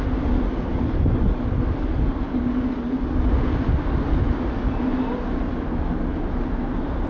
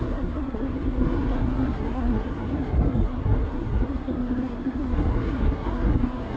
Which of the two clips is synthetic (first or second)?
second